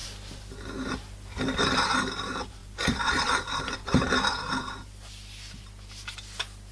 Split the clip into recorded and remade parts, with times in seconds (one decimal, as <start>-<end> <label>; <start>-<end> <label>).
0.0-2.6 recorded; 2.6-3.6 remade; 3.6-6.7 recorded